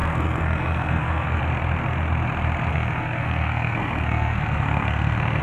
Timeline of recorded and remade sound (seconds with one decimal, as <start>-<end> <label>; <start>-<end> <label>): 0.0-1.4 remade; 1.4-2.7 recorded; 2.7-5.4 remade